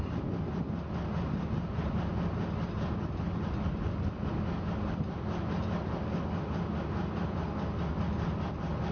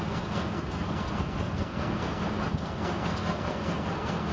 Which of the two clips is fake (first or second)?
second